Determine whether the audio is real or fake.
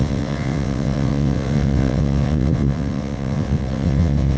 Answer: fake